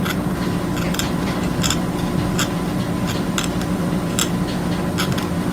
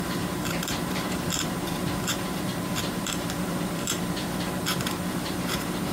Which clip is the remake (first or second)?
second